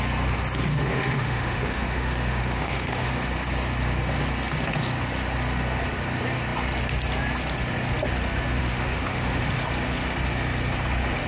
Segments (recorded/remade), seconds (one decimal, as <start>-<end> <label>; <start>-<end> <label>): 0.0-0.7 recorded; 0.7-3.1 remade; 3.1-8.6 recorded; 8.6-9.5 remade; 9.5-11.3 recorded